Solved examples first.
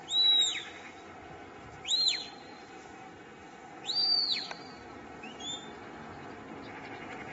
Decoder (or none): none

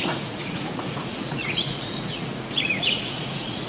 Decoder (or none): vocoder, Vocos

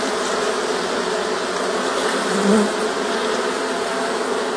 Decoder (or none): none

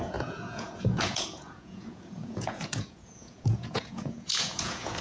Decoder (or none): vocoder, Vocos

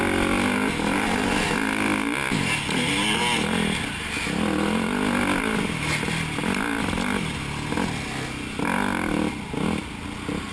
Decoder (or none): none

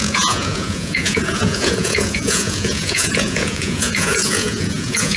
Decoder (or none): vocoder, Vocos